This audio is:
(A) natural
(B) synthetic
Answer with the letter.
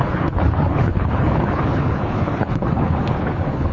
B